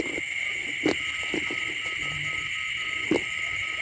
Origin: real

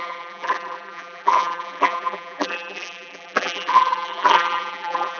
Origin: fake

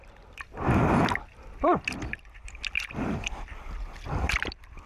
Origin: fake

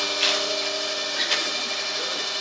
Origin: real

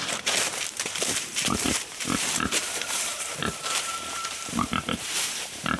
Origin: fake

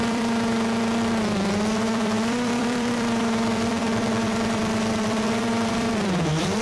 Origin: fake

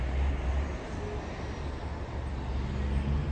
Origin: real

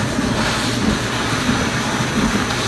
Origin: fake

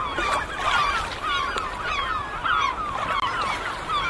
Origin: real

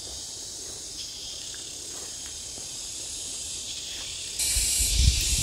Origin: fake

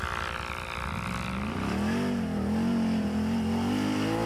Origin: real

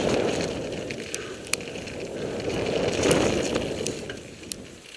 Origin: real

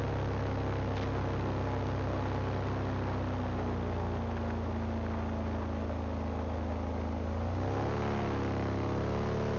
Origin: real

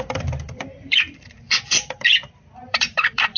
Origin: fake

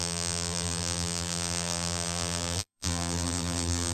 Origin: fake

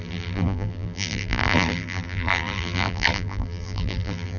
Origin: fake